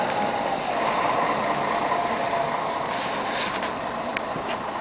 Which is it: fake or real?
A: real